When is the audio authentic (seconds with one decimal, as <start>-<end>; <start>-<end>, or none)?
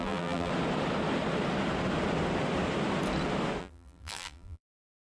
0.5-3.6